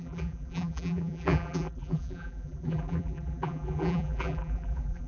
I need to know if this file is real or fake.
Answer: fake